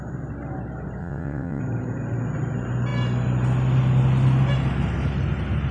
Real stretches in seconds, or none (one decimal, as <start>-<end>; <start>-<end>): 0.0-1.0; 1.6-5.7